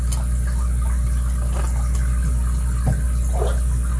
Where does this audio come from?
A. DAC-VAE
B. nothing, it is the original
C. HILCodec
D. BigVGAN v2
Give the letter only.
B